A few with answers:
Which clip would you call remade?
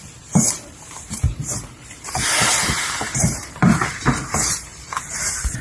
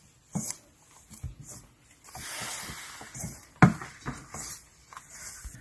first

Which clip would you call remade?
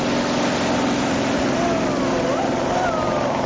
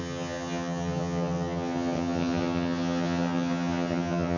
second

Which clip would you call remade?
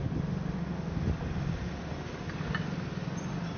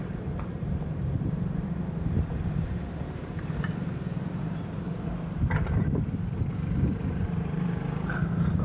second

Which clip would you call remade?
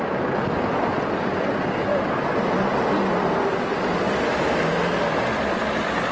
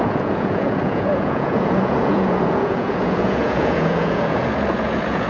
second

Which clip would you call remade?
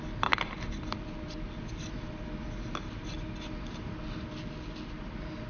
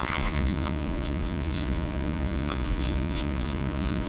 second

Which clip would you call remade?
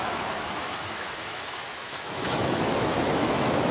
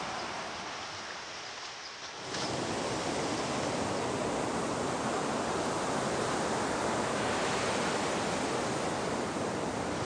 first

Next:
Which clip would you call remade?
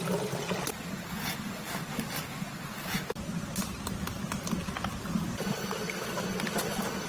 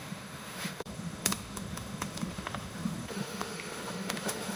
second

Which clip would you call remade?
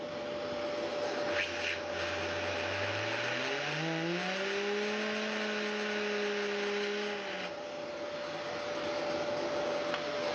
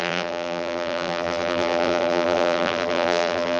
second